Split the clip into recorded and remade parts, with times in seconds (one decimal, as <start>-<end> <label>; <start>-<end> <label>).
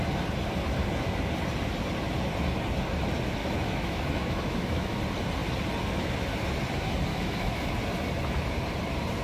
0.0-3.4 recorded; 3.4-5.0 remade; 5.0-7.1 recorded; 7.1-7.7 remade; 7.7-9.2 recorded